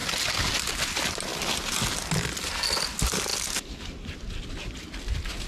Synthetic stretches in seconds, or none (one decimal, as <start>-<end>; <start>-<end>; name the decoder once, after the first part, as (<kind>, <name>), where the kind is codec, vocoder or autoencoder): none